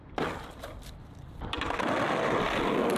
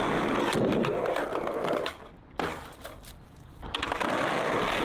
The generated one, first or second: first